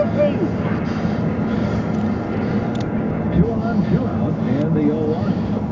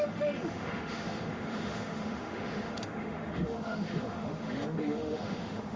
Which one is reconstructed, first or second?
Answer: second